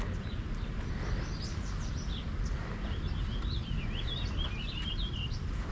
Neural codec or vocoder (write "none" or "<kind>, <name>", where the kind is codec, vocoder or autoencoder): none